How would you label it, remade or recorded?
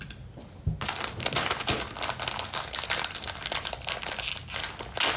recorded